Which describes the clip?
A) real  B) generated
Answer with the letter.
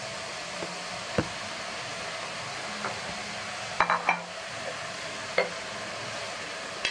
A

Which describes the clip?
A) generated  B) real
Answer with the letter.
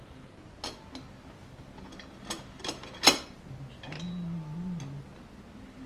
B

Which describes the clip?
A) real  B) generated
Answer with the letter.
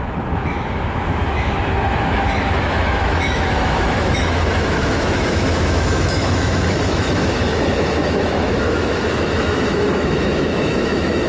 B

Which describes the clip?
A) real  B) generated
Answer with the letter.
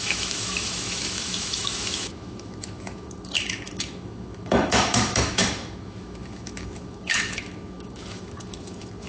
B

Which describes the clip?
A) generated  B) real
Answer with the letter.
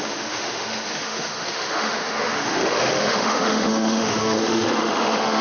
A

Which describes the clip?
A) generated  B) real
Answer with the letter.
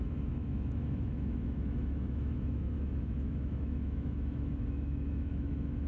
A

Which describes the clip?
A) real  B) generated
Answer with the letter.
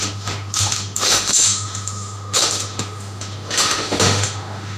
B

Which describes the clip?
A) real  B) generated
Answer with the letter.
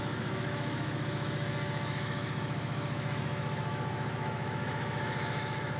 B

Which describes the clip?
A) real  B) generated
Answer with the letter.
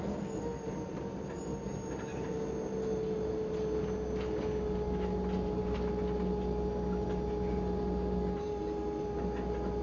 A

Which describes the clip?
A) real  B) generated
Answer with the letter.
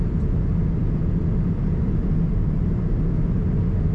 A